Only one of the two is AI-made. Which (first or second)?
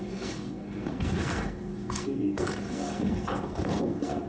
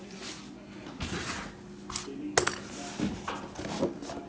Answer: first